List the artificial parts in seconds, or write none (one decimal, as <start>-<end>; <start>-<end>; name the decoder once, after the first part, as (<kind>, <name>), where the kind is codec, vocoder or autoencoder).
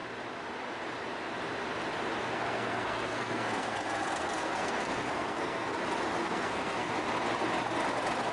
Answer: 2.2-5.8 (codec, SNAC); 6.2-6.9